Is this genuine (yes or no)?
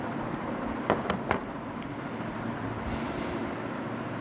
yes